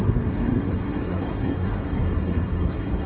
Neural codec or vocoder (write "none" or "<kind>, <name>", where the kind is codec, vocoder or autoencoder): codec, SNAC